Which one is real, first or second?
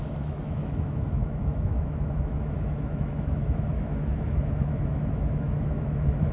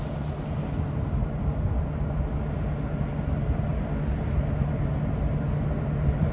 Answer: second